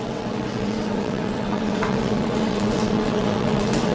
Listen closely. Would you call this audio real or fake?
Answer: fake